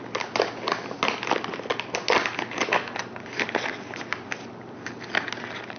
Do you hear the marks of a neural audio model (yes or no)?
no